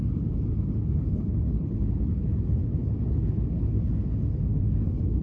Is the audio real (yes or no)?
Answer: no